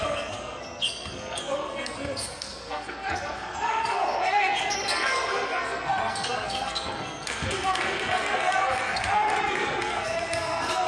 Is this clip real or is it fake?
fake